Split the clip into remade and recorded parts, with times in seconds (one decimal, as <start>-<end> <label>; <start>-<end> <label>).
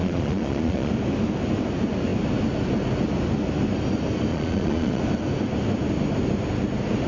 0.0-0.9 remade; 0.9-4.3 recorded; 4.3-5.0 remade; 5.0-7.1 recorded